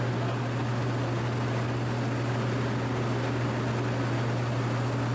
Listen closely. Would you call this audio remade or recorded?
recorded